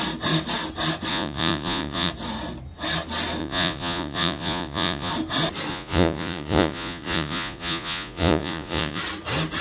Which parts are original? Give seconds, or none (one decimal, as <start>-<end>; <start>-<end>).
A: 0.0-1.1; 2.1-3.4; 5.1-5.7; 9.0-9.6